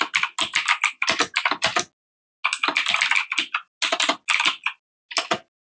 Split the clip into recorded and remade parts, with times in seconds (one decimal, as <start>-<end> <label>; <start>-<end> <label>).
0.0-5.8 recorded

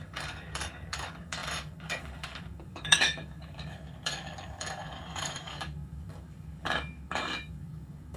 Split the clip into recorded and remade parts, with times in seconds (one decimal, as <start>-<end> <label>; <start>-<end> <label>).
0.0-8.2 remade